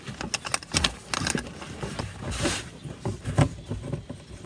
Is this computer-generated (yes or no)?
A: no